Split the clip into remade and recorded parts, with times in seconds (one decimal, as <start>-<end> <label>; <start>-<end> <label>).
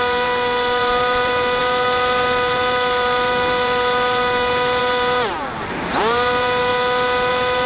0.0-6.7 remade; 6.7-7.3 recorded; 7.3-7.7 remade